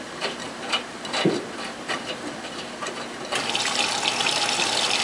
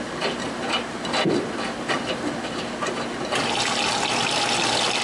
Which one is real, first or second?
second